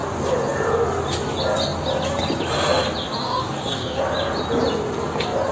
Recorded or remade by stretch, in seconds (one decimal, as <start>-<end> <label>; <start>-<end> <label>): 0.0-3.2 recorded; 3.2-4.0 remade; 4.0-5.5 recorded